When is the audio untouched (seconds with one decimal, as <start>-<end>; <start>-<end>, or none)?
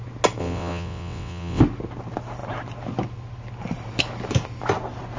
0.0-0.4; 1.6-5.2